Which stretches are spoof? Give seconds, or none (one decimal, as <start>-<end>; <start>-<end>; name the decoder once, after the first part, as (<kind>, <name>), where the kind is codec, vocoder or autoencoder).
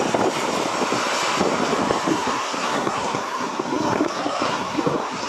2.1-5.3 (codec, SNAC)